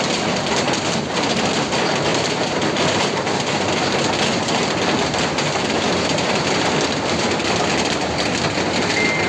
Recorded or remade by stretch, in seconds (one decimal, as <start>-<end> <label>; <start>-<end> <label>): 0.0-9.3 recorded